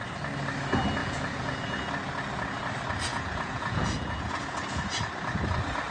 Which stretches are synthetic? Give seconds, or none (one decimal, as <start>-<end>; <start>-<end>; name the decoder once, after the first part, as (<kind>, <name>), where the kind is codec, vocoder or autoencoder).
1.0-1.9 (vocoder, Vocos); 3.1-4.8